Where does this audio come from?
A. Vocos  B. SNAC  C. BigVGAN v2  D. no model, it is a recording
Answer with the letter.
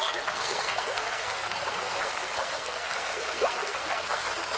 B